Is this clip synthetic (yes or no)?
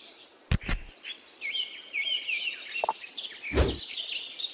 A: yes